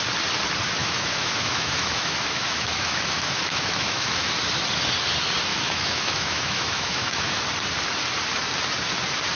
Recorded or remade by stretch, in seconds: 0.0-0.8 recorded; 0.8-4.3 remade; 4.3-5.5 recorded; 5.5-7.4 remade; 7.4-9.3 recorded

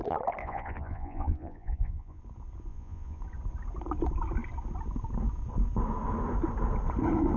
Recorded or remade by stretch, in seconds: 0.0-0.4 recorded; 0.4-2.2 remade; 2.2-2.7 recorded; 2.7-3.2 remade; 3.2-7.4 recorded

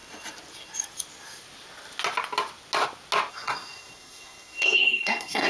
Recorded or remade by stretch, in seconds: 0.0-3.3 recorded; 3.3-5.5 remade

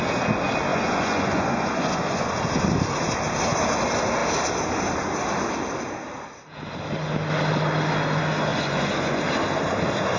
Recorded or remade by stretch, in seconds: 0.0-0.7 recorded; 0.7-2.3 remade; 2.3-8.5 recorded; 8.5-9.2 remade; 9.2-10.2 recorded

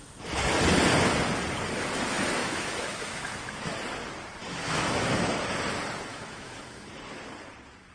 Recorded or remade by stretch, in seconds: 0.0-2.4 recorded; 2.4-3.7 remade; 3.7-4.4 recorded; 4.4-5.2 remade; 5.2-6.1 recorded; 6.1-6.9 remade; 6.9-7.9 recorded

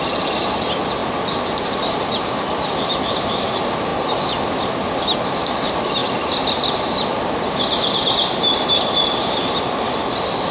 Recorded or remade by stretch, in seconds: 0.0-10.5 recorded

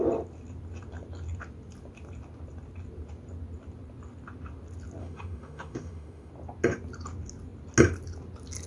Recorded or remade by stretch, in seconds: 0.0-5.0 recorded; 5.0-6.3 remade; 6.3-8.7 recorded